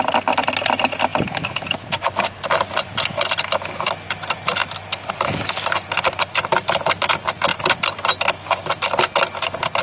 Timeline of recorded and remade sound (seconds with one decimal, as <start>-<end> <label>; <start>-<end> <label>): 0.0-9.8 recorded